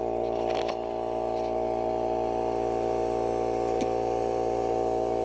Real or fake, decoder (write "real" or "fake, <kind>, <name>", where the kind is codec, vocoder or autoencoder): real